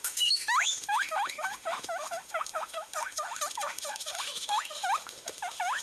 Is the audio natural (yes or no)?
no